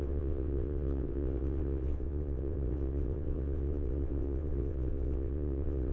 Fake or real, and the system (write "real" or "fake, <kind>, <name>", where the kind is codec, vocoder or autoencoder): fake, vocoder, WaveNeXt